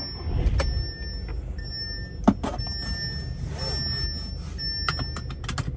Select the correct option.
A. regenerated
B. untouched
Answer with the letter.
B